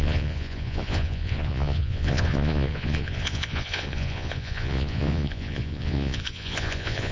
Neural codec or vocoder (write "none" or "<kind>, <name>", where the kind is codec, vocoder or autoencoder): vocoder, Vocos